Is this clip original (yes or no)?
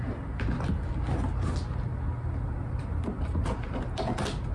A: yes